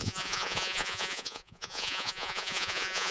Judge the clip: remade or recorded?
remade